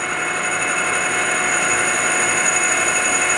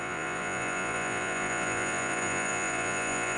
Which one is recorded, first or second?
first